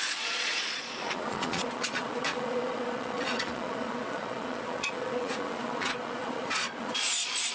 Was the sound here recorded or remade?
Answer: remade